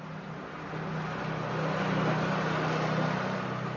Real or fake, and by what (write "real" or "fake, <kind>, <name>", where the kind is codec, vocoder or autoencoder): real